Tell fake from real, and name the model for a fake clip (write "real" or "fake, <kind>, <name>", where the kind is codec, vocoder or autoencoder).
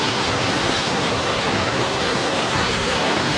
fake, codec, SNAC